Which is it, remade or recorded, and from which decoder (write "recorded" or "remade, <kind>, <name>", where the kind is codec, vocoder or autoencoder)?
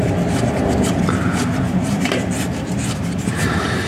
remade, vocoder, BigVGAN v2